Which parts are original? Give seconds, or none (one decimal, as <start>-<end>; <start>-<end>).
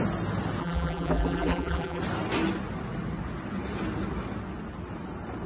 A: 0.0-0.6; 2.0-5.5